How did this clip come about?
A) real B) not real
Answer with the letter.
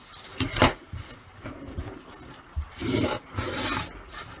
A